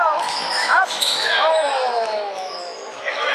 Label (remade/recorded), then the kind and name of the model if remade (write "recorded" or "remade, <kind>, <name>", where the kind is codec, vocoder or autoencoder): remade, autoencoder, DAC-VAE